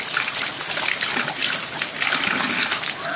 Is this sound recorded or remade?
recorded